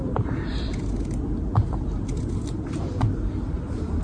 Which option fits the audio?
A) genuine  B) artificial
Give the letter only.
A